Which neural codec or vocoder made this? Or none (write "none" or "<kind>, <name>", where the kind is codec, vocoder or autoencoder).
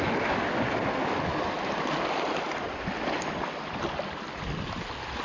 none